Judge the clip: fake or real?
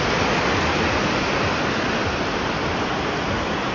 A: real